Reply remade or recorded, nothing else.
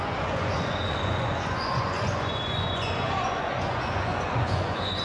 remade